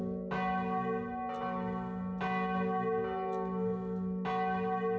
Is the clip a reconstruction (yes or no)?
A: no